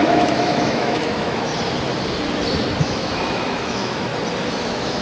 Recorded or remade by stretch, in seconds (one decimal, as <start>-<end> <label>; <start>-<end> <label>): 0.0-1.5 remade; 1.5-2.8 recorded; 2.8-4.1 remade; 4.1-4.6 recorded; 4.6-5.0 remade